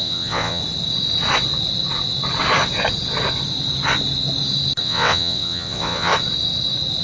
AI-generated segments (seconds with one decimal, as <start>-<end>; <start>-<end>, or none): 0.0-0.6; 4.8-6.1